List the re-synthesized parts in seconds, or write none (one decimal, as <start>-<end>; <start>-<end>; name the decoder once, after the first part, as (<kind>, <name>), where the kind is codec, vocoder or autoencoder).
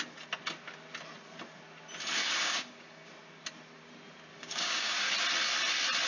2.2-3.1 (codec, DAC); 4.3-5.1